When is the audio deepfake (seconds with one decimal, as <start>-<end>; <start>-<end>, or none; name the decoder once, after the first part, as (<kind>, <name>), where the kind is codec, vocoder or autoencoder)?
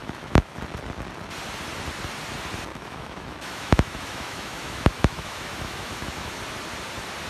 0.0-0.6 (autoencoder, DAC-VAE); 2.7-6.4